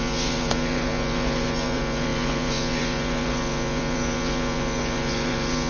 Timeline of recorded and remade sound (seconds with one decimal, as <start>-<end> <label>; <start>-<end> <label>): 0.0-5.7 remade